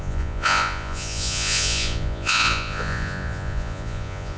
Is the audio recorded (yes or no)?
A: no